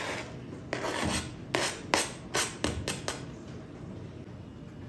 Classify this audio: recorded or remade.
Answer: recorded